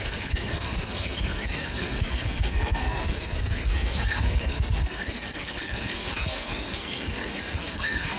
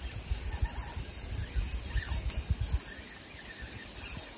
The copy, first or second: first